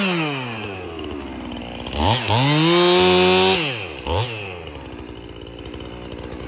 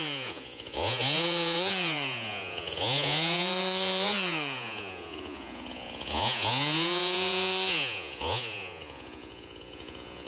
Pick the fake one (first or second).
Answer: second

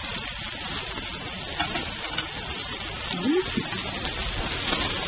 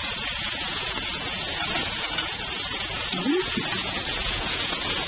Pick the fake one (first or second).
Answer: second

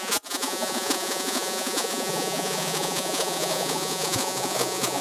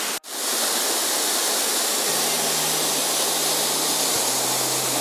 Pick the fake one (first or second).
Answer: first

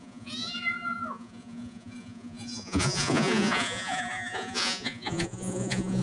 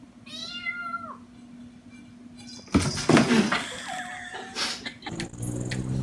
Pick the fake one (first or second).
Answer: first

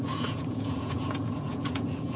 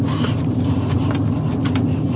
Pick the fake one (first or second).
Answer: first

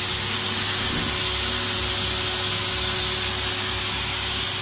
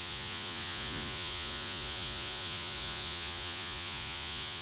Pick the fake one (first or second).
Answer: second